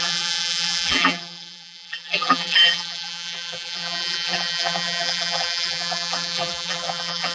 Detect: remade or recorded remade